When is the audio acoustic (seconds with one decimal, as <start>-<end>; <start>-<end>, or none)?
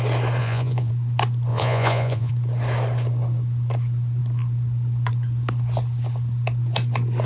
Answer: 0.0-0.4; 0.9-1.5; 2.3-7.2